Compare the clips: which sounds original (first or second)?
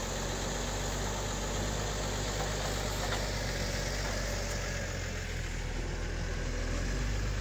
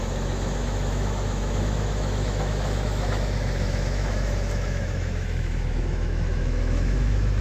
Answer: first